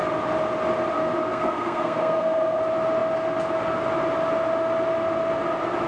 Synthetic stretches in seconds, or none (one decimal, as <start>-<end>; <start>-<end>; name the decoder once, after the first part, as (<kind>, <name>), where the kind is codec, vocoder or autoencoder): 1.3-2.6 (codec, SNAC)